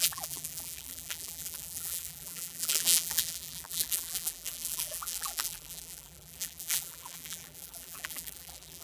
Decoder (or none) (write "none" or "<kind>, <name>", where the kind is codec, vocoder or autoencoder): vocoder, BigVGAN v2